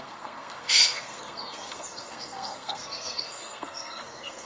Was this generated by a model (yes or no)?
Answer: yes